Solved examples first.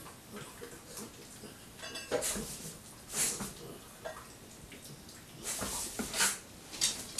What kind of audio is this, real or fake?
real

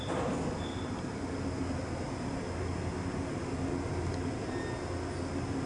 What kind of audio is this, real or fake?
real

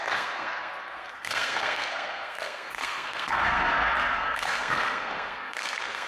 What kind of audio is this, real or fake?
fake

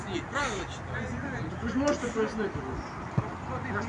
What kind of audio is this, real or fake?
real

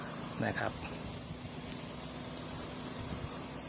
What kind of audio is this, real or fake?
real